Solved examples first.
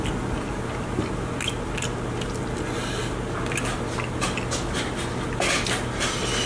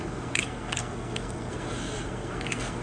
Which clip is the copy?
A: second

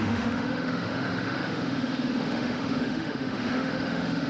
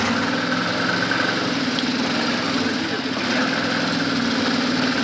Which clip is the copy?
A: first